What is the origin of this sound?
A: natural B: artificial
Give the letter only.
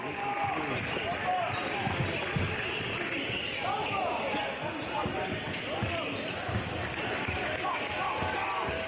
A